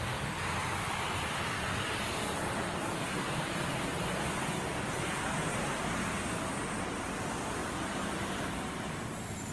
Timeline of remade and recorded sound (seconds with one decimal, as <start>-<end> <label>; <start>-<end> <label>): 0.0-0.6 recorded; 0.6-5.5 remade; 5.5-7.6 recorded; 7.6-9.1 remade; 9.1-9.5 recorded